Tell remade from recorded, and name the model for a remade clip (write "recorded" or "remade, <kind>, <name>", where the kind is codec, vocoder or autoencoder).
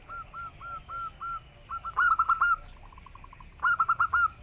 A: recorded